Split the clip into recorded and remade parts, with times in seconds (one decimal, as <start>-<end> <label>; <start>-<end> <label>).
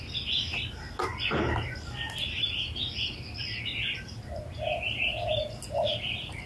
0.0-5.1 recorded; 5.1-6.5 remade